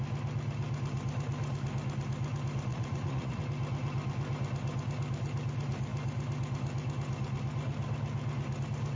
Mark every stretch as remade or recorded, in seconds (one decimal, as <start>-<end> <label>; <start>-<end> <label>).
0.0-2.7 recorded; 2.7-3.4 remade; 3.4-9.0 recorded